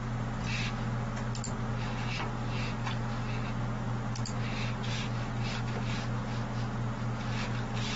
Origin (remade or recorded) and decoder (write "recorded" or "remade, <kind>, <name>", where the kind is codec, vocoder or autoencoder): recorded